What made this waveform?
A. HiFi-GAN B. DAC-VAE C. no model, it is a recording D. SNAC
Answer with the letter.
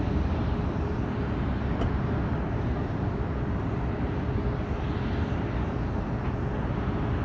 C